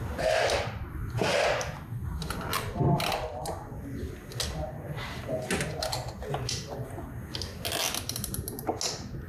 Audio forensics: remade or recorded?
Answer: recorded